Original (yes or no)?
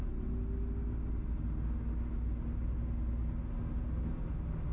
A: yes